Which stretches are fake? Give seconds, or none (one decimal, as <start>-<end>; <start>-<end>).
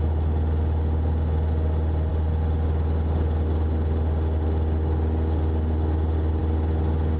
none